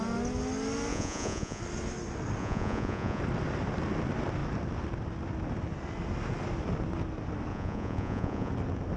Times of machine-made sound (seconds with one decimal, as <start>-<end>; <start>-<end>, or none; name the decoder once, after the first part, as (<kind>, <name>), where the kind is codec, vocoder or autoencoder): 0.9-1.6 (vocoder, Vocos); 2.4-3.2; 7.5-8.5

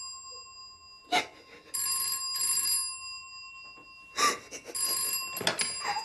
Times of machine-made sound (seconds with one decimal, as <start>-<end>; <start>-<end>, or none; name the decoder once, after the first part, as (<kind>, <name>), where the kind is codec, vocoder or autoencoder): none